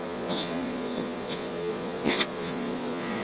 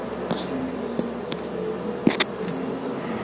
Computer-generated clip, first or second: first